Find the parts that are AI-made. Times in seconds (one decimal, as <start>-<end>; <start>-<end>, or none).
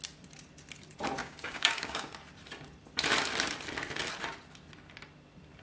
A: 1.2-2.1